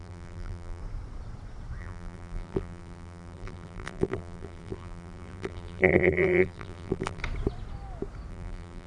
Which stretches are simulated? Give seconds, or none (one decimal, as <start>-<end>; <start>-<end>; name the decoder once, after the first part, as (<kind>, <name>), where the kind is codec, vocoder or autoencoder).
0.0-0.8 (vocoder, BigVGAN v2); 1.8-7.2; 8.3-8.9